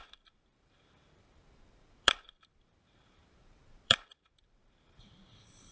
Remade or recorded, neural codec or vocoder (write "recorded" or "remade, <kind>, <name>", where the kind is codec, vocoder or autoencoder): remade, vocoder, BigVGAN v2